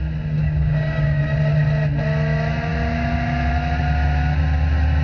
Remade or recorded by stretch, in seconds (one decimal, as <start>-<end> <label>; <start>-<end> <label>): 0.0-0.4 recorded; 0.4-1.2 remade; 1.2-5.0 recorded